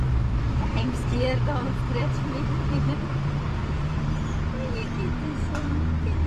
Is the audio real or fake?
fake